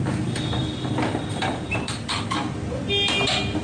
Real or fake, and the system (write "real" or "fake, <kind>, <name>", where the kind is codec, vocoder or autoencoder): real